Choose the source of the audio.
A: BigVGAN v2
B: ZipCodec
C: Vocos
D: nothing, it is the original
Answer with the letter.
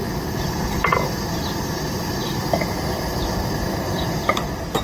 D